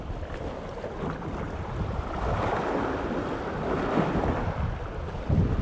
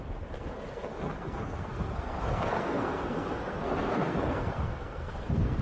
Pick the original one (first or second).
first